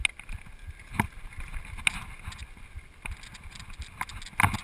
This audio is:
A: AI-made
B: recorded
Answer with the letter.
B